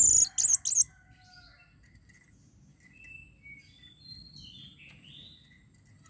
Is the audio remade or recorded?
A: recorded